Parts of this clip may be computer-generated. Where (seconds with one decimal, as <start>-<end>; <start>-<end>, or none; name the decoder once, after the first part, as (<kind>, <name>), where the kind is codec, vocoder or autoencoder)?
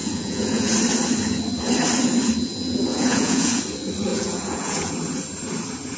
0.0-0.7 (vocoder, Vocos); 2.9-3.6; 4.1-4.9